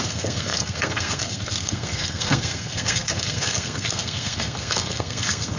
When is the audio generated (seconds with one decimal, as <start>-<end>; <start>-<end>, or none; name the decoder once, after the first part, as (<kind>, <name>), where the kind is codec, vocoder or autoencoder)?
0.0-5.6 (codec, SNAC)